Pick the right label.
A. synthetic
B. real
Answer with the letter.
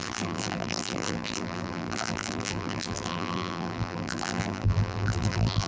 A